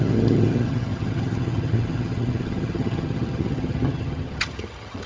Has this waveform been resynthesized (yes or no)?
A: yes